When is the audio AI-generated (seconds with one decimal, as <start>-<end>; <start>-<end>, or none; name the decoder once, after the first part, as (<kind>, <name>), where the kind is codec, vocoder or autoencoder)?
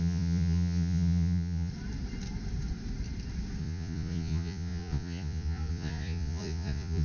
0.0-1.7 (vocoder, Vocos); 3.6-7.0